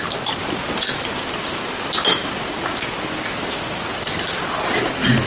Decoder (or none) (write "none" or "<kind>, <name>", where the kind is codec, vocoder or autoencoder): none